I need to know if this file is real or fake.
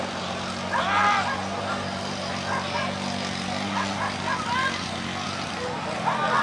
real